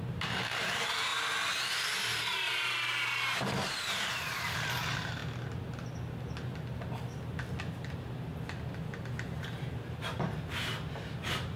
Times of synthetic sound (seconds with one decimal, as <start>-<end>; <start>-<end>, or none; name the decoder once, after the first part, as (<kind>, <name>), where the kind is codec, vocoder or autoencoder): 0.0-1.1 (vocoder, BigVGAN v2); 4.1-5.2; 7.9-8.3; 9.4-11.6